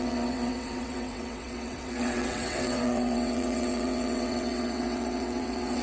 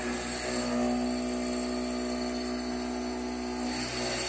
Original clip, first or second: second